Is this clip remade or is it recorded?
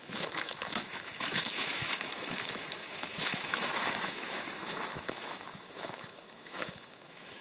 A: remade